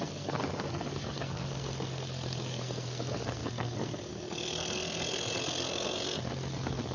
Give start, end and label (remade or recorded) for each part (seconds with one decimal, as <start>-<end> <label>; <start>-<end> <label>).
0.0-6.9 remade